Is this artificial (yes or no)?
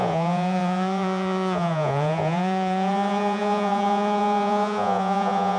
yes